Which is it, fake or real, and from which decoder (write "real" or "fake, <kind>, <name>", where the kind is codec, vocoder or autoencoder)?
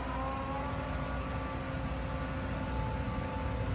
real